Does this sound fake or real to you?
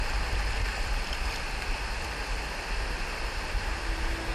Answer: real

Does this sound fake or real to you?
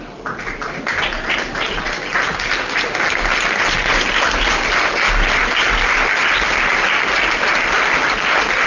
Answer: real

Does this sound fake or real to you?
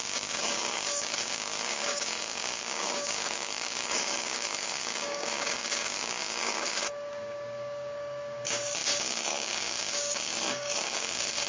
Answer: fake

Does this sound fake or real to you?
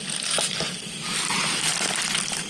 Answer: real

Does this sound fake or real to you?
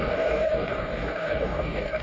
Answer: fake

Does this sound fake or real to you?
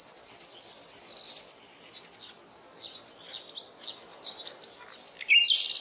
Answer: real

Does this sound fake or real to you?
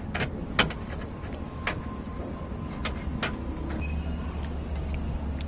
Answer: real